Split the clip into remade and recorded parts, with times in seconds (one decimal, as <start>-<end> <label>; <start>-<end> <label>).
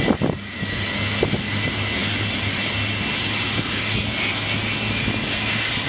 0.0-5.9 recorded